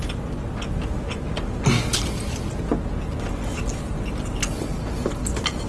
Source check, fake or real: real